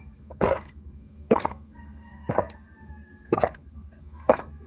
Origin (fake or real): fake